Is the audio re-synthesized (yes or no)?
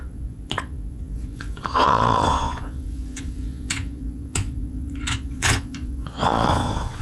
yes